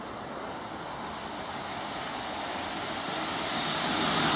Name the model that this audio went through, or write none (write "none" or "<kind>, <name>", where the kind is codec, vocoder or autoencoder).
none